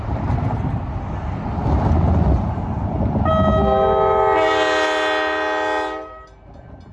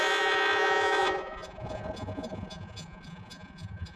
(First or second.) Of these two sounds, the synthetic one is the second